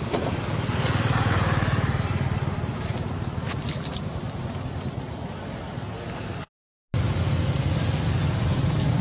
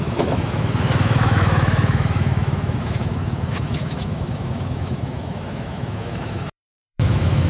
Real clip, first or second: first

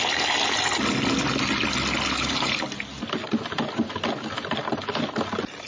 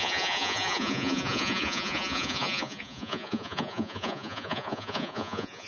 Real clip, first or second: first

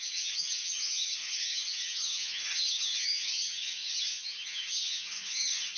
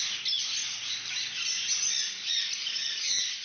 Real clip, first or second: second